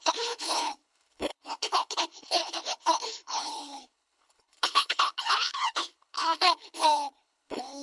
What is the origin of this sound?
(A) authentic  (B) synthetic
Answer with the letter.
B